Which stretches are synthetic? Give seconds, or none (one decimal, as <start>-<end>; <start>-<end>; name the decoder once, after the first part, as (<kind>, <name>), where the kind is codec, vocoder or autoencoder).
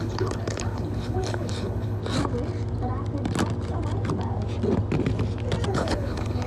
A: 0.0-2.0 (codec, HILCodec); 5.7-6.5